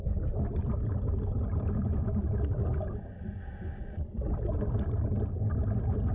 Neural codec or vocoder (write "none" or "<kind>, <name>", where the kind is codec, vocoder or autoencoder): none